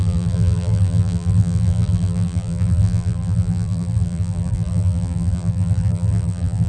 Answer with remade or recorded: remade